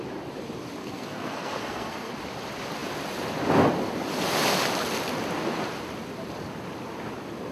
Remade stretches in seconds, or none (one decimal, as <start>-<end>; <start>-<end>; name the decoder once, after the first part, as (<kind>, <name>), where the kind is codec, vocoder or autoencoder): 0.8-2.1 (codec, SNAC)